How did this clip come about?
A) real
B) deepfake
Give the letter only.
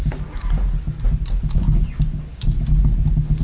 A